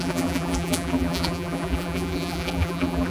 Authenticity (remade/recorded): remade